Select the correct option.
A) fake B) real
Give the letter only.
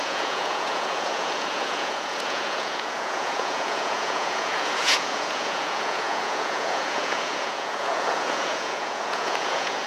A